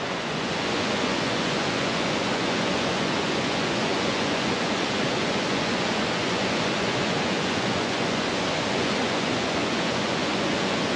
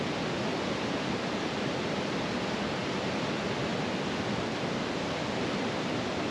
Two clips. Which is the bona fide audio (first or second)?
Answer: second